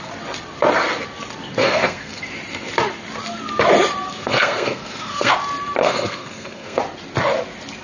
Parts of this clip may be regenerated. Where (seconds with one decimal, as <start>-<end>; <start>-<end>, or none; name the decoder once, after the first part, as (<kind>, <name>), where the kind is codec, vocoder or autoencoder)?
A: 1.6-2.2 (codec, SNAC); 4.1-5.3; 5.8-6.8